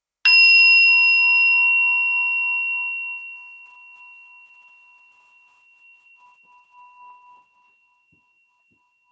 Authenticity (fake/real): real